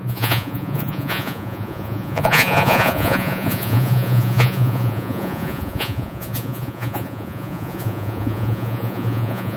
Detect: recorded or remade remade